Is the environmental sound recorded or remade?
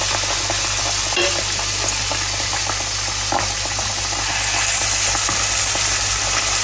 recorded